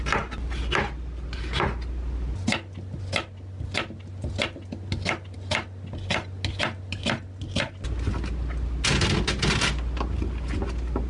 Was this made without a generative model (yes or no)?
yes